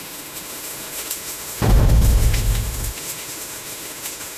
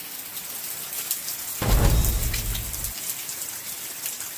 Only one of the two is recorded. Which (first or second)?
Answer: second